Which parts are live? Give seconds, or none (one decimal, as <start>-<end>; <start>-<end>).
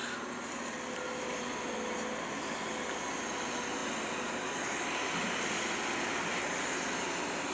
0.0-7.5